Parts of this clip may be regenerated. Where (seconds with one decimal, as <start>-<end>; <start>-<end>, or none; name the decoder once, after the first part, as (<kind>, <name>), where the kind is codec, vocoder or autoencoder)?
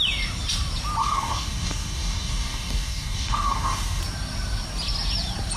1.0-4.0 (codec, DAC)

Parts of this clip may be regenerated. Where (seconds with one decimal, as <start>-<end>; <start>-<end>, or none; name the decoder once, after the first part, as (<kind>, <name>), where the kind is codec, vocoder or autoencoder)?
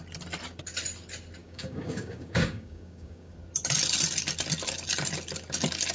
1.4-3.3 (codec, DAC)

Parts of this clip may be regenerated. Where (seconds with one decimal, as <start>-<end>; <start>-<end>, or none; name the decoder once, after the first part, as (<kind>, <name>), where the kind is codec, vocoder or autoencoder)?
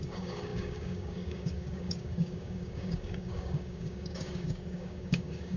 0.0-5.6 (codec, DAC)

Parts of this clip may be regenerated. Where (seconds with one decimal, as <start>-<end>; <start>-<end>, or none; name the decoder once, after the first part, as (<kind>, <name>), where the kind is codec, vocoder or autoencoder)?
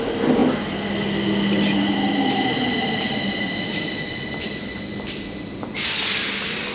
none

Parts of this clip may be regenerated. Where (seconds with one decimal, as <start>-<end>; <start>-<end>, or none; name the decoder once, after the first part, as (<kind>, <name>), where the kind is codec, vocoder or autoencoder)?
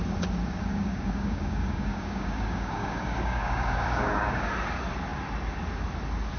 0.7-4.5 (codec, DAC)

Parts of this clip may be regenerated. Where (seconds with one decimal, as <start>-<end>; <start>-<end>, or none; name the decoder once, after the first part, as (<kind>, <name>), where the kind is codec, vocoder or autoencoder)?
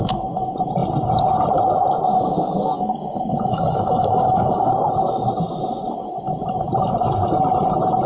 2.1-4.7 (codec, DAC)